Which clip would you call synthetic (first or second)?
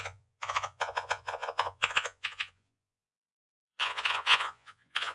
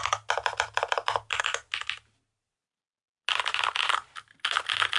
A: first